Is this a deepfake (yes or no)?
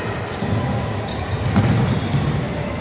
no